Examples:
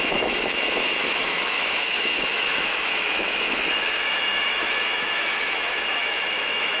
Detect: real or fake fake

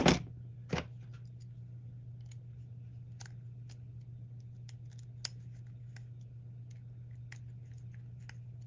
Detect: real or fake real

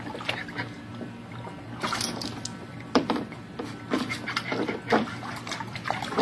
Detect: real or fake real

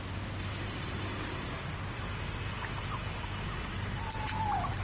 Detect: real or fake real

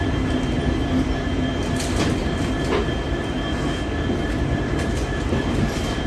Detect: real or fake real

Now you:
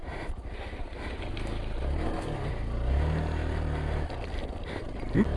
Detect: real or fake real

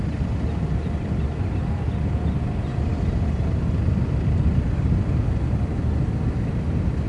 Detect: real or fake real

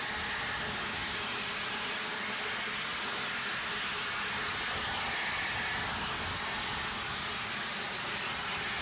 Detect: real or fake real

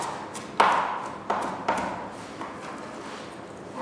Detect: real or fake real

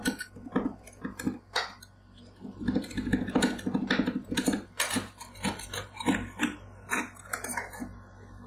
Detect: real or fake real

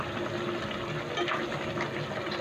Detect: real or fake real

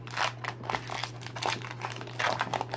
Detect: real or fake real